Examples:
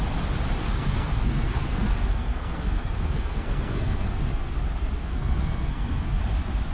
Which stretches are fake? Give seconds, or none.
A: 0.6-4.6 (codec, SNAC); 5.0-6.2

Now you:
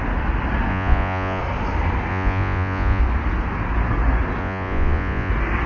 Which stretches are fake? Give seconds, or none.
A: 0.7-1.4 (vocoder, Vocos); 2.1-3.0; 4.4-5.3

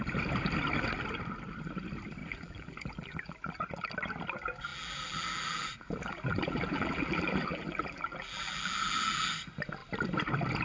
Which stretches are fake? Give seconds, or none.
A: 2.2-3.6 (vocoder, BigVGAN v2); 4.7-9.3

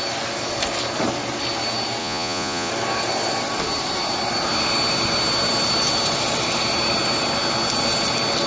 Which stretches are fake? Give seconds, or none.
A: 2.0-2.7 (vocoder, Vocos)